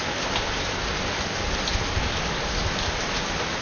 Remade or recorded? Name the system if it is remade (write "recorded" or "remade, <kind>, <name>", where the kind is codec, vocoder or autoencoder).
recorded